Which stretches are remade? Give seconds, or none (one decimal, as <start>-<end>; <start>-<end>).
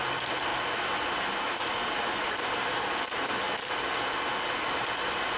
0.5-3.7